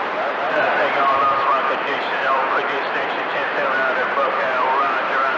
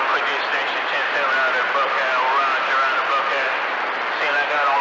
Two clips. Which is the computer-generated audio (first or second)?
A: first